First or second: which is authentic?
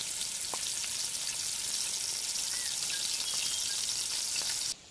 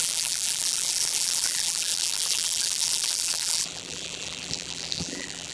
first